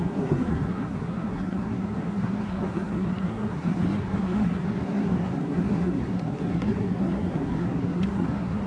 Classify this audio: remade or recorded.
remade